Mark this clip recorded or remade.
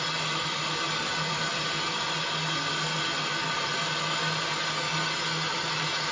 recorded